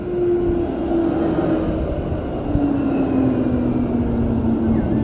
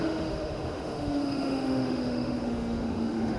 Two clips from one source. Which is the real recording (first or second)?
first